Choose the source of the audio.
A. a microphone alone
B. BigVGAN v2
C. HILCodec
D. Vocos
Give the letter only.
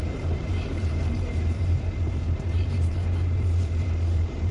B